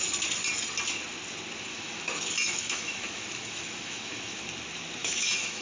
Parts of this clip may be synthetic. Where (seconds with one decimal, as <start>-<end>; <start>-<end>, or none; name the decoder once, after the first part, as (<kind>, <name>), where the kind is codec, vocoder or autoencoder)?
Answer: 1.7-4.4 (autoencoder, DAC-VAE); 5.0-5.6